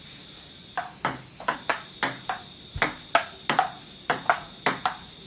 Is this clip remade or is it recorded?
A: recorded